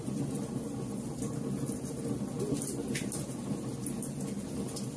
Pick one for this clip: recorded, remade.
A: recorded